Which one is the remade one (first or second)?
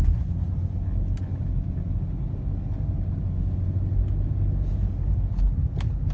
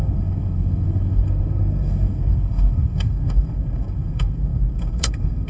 second